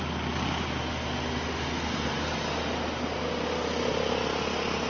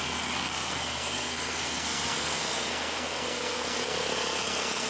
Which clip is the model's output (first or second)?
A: second